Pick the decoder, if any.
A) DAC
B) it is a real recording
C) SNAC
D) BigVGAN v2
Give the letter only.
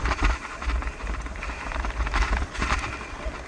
D